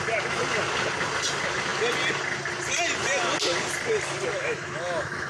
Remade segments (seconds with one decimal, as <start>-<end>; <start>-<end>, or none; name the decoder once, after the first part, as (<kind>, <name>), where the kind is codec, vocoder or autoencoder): 4.3-5.3 (autoencoder, DAC-VAE)